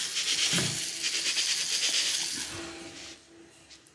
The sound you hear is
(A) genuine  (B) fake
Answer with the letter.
A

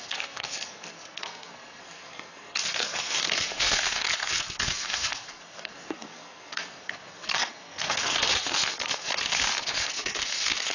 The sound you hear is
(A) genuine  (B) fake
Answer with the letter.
B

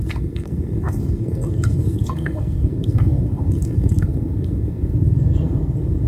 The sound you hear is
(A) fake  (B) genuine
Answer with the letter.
A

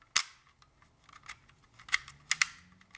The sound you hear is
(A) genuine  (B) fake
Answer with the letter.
A